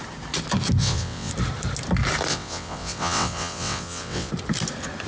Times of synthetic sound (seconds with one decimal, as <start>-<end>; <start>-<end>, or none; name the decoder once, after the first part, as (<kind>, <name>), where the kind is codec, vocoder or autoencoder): 0.8-1.3 (vocoder, WaveNeXt); 2.3-4.3